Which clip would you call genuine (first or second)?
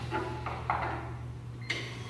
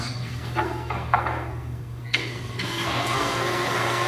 first